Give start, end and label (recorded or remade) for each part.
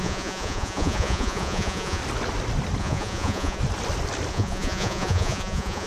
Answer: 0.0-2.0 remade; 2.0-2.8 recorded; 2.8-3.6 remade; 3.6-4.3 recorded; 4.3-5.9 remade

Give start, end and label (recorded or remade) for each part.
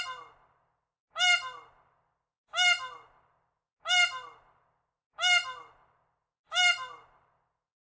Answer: 0.0-7.8 recorded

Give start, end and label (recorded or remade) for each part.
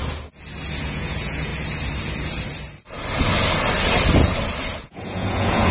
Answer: 0.0-0.8 recorded; 0.8-1.5 remade; 1.5-4.8 recorded; 4.8-5.7 remade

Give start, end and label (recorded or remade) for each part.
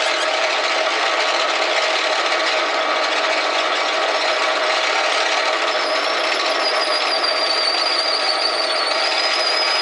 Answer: 0.0-2.4 recorded; 2.4-4.4 remade; 4.4-9.8 recorded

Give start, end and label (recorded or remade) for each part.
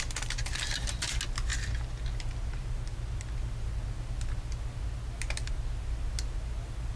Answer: 0.0-7.0 recorded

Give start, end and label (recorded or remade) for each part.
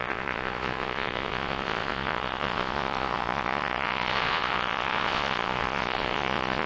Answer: 0.0-6.7 remade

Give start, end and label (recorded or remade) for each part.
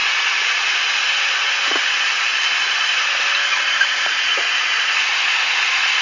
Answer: 0.0-3.6 recorded; 3.6-6.0 remade